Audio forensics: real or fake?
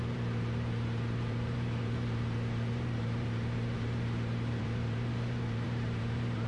fake